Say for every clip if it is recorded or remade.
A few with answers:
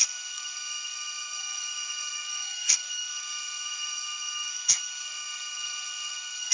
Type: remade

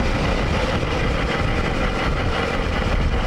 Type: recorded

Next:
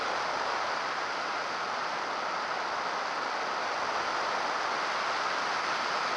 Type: recorded